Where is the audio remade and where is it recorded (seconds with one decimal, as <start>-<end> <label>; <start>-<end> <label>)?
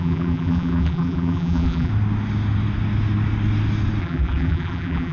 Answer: 0.0-1.9 remade; 1.9-4.0 recorded; 4.0-5.1 remade